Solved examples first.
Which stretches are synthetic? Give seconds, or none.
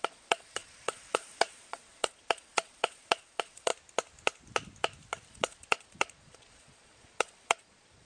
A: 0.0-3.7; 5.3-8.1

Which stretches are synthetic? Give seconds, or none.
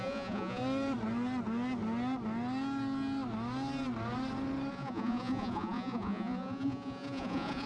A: 0.0-0.6; 4.7-7.7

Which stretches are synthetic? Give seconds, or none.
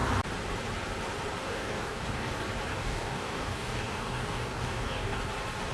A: 1.4-2.3; 2.7-5.2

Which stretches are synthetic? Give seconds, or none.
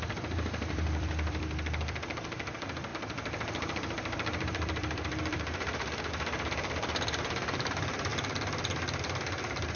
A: 0.0-8.1; 9.0-9.8